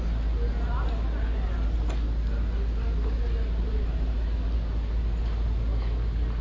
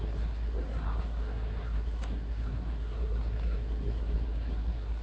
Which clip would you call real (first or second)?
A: first